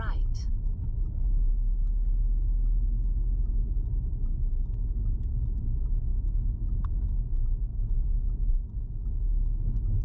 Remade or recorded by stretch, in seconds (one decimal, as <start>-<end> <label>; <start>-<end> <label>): 0.0-7.7 recorded; 7.7-8.8 remade; 8.8-10.0 recorded